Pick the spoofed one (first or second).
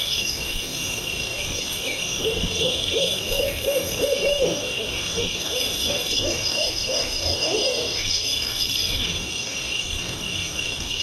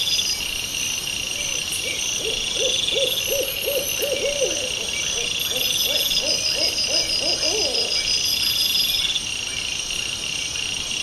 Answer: first